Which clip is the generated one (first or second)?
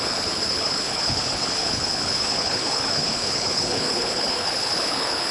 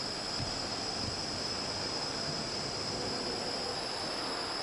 first